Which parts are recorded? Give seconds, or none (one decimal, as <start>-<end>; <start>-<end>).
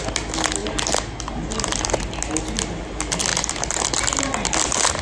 0.0-5.0